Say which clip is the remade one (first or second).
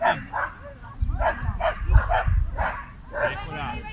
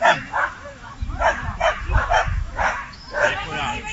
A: second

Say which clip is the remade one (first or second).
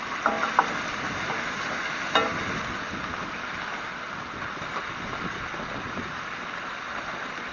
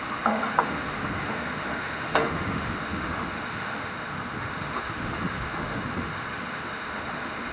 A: second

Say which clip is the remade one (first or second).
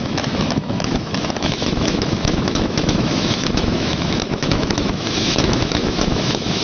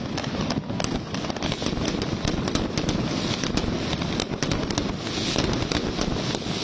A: first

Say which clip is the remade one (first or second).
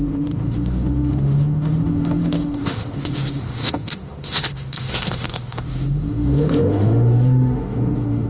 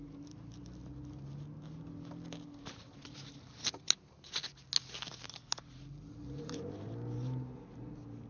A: first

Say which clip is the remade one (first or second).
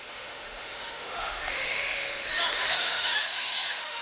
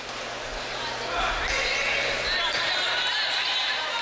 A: first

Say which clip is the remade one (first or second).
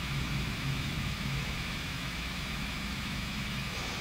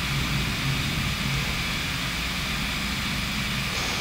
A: first